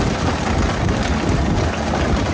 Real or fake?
real